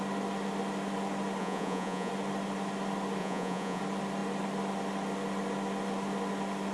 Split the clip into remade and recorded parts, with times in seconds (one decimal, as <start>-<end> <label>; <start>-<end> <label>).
0.0-1.4 recorded; 1.4-2.1 remade; 2.1-3.2 recorded; 3.2-3.8 remade; 3.8-6.7 recorded